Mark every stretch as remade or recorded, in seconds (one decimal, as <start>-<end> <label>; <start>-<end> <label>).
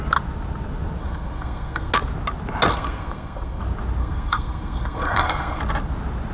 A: 0.0-1.0 recorded; 1.0-1.9 remade; 1.9-2.7 recorded; 2.7-3.6 remade; 3.6-4.0 recorded; 4.0-5.6 remade; 5.6-6.3 recorded